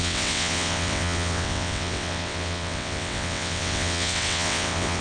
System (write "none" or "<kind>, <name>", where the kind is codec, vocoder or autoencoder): vocoder, WaveNeXt